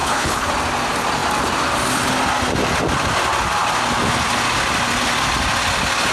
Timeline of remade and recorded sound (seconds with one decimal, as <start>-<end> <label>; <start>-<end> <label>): 0.0-0.5 remade; 0.5-6.1 recorded